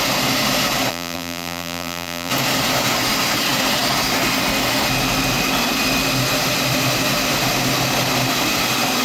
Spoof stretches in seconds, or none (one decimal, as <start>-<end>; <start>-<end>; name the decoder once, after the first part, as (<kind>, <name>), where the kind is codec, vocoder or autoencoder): 0.9-2.3 (vocoder, BigVGAN v2)